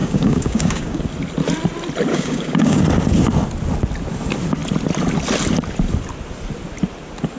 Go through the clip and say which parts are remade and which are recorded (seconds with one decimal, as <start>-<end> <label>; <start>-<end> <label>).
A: 0.0-1.0 remade; 1.0-2.1 recorded; 2.1-2.8 remade; 2.8-7.4 recorded